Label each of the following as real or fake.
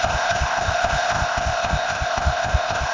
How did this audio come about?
fake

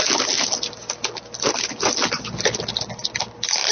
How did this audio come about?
real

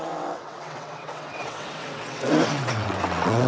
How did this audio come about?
fake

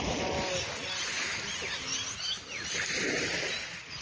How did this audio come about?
real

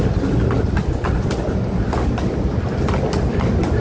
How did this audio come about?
real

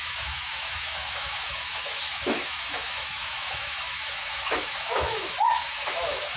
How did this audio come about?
fake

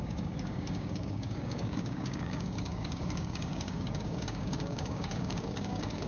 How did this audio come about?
fake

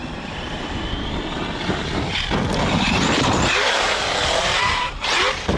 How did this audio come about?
real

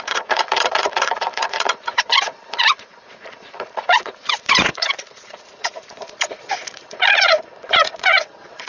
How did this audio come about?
fake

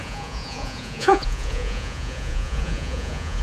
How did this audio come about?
fake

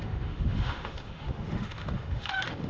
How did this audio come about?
fake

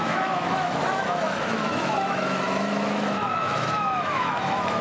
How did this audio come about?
fake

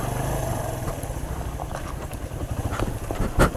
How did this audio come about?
real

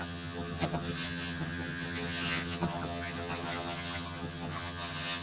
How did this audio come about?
fake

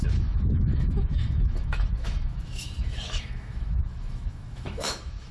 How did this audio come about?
fake